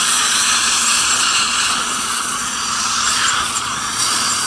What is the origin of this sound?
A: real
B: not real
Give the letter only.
B